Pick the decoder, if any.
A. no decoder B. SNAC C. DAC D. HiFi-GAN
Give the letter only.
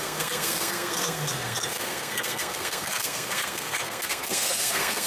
B